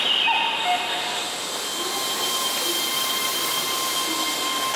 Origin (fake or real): real